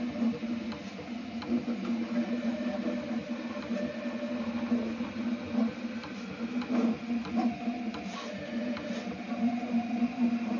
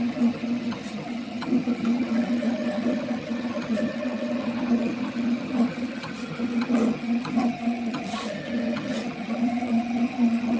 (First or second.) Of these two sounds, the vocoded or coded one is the second